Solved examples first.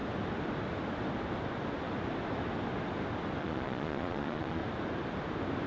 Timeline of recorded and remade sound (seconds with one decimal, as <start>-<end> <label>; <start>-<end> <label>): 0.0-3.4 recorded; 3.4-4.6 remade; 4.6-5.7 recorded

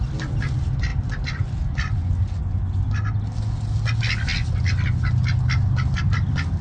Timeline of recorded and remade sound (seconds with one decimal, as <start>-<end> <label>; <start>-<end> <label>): 0.0-6.6 recorded

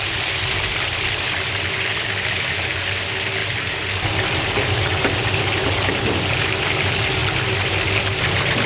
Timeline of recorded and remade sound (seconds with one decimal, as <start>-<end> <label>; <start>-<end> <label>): 0.0-8.7 recorded

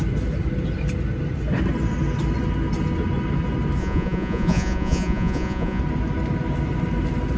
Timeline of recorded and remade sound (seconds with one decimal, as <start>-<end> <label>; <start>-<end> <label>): 0.0-3.8 recorded; 3.8-5.8 remade; 5.8-7.4 recorded

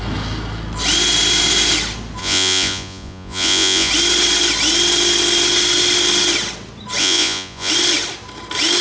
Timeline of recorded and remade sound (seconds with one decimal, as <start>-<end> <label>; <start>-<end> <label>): 0.0-2.2 recorded; 2.2-3.9 remade; 3.9-7.0 recorded; 7.0-7.7 remade; 7.7-8.8 recorded

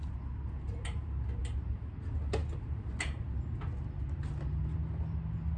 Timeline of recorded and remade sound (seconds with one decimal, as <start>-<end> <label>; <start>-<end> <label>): 0.0-5.6 recorded

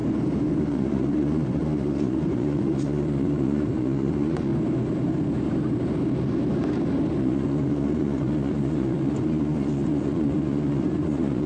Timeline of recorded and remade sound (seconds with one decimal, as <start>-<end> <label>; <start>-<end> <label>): 0.0-0.6 recorded; 0.6-4.5 remade; 4.5-7.2 recorded; 7.2-11.5 remade